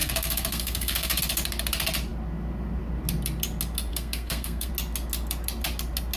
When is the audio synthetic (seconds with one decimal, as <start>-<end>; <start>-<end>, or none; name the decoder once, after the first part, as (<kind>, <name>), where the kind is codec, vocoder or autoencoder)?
0.0-1.2 (codec, SNAC); 3.9-4.7